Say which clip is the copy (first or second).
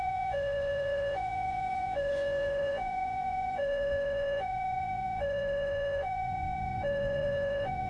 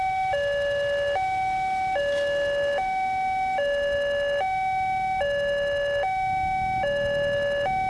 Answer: first